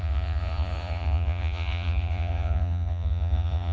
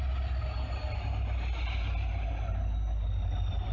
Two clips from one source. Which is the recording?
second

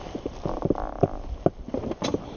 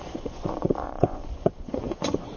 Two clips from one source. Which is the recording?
first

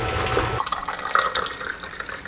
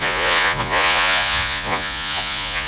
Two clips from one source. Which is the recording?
first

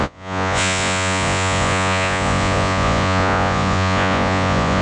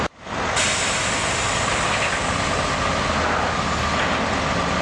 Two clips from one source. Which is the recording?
second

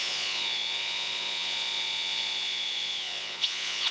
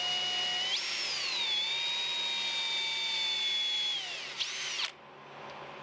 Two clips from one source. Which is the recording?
second